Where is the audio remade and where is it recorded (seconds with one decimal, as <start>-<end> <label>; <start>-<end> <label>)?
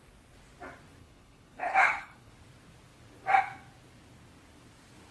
0.0-1.0 recorded; 1.0-2.3 remade; 2.3-5.1 recorded